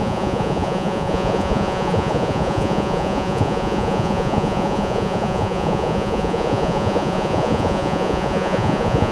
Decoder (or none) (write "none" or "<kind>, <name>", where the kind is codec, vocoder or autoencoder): vocoder, Vocos